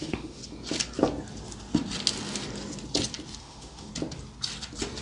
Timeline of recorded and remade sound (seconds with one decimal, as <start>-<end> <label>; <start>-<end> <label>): 0.0-0.4 remade; 0.4-3.4 recorded; 3.4-3.9 remade; 3.9-5.0 recorded